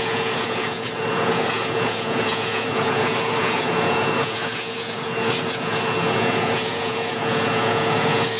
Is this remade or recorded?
remade